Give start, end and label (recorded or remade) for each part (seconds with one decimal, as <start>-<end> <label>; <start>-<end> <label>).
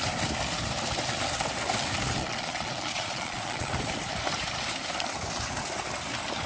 0.0-2.2 recorded; 2.2-3.7 remade; 3.7-6.5 recorded